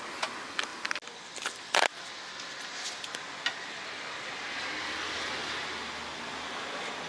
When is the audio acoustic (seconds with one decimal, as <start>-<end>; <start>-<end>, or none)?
0.0-7.1